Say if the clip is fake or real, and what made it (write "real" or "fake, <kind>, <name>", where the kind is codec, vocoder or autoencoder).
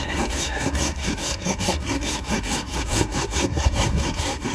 fake, codec, SNAC